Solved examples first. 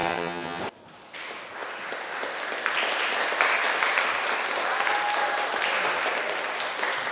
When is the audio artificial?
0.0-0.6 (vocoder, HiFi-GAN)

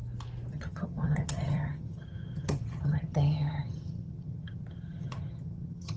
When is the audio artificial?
0.5-6.0 (vocoder, HiFi-GAN)

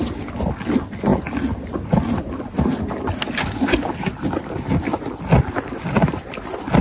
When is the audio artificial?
none

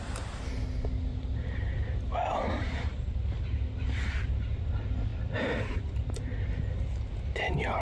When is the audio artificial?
1.1-3.2 (vocoder, BigVGAN v2)

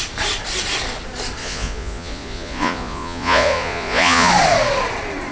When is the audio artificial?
1.4-4.3 (vocoder, Vocos)

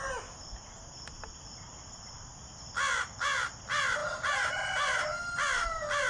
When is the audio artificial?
none